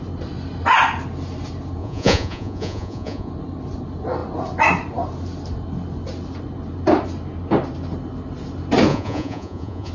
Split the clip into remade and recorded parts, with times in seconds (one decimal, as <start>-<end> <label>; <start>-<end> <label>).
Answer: 0.0-1.8 recorded; 1.8-3.3 remade; 3.3-8.9 recorded; 8.9-9.9 remade